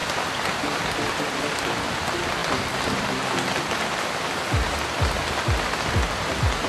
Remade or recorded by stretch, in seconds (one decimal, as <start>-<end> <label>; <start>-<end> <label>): 0.0-6.7 recorded